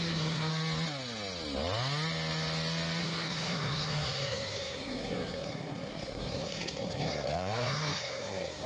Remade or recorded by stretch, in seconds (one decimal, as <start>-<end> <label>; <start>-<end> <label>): 0.0-0.5 remade; 0.5-3.0 recorded; 3.0-8.7 remade